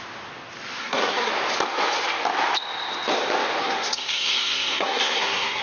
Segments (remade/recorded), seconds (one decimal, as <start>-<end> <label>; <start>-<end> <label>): 0.0-0.8 recorded; 0.8-1.3 remade; 1.3-3.6 recorded; 3.6-5.6 remade